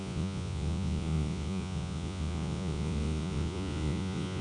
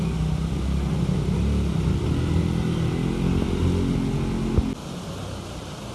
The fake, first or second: first